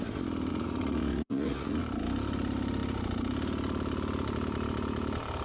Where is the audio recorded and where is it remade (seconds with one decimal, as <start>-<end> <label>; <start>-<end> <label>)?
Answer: 0.0-0.5 recorded; 0.5-1.8 remade; 1.8-5.4 recorded